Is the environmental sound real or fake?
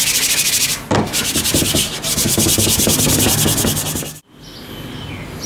real